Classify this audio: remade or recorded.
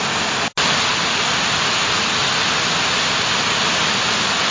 recorded